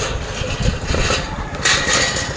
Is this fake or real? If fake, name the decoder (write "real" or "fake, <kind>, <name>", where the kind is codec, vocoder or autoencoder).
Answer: real